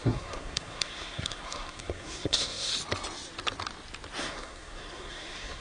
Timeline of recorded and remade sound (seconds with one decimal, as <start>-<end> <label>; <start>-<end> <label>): 0.0-2.7 remade; 2.7-4.2 recorded; 4.2-5.6 remade